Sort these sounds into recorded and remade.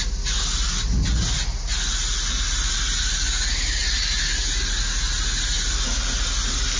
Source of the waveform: recorded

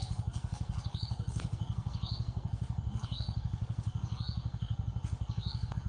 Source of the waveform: remade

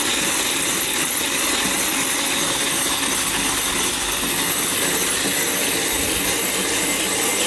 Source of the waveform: recorded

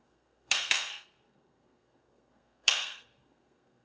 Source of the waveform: remade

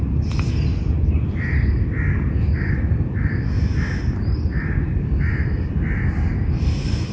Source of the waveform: recorded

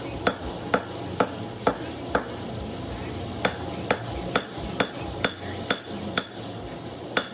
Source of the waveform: recorded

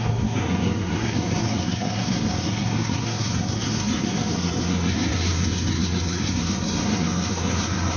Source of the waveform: remade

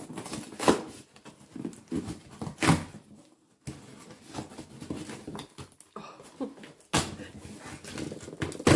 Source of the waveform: recorded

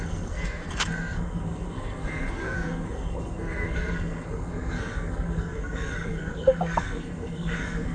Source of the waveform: remade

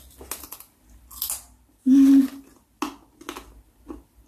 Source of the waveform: recorded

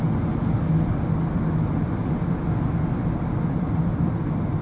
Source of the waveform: recorded